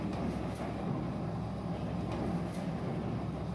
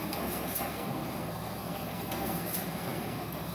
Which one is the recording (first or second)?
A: first